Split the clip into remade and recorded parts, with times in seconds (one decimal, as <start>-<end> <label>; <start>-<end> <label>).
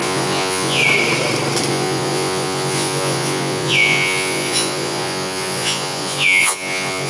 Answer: 0.0-0.8 remade; 0.8-1.7 recorded; 1.7-7.1 remade